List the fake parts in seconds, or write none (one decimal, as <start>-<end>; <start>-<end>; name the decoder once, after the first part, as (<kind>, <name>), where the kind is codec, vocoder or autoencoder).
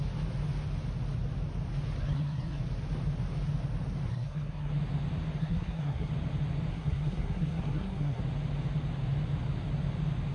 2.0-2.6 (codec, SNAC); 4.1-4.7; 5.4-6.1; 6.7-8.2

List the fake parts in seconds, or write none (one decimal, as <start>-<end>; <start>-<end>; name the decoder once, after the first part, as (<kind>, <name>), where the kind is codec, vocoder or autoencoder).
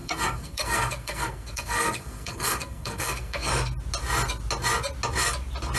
0.0-3.5 (codec, SNAC)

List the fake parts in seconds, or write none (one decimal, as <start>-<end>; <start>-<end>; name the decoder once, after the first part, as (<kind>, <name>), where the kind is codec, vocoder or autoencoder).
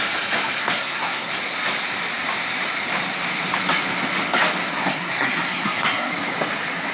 0.6-1.3 (codec, SNAC); 4.7-6.1